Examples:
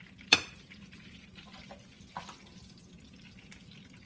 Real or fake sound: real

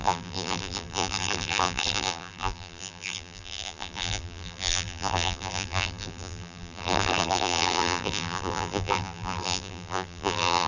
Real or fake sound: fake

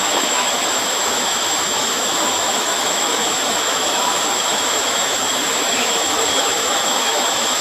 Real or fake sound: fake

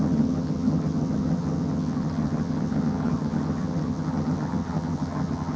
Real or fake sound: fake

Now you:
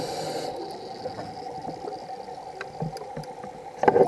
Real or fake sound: real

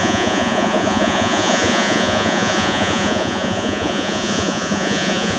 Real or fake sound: fake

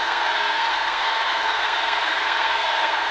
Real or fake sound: fake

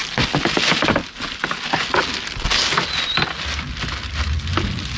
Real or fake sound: real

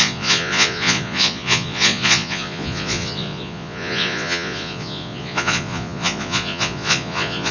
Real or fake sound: fake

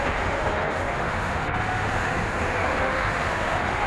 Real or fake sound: fake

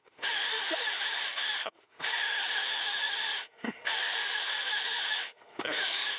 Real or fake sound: fake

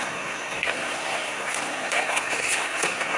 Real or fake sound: fake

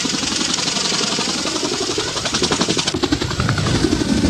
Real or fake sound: real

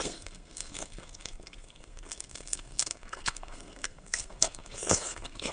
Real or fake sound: fake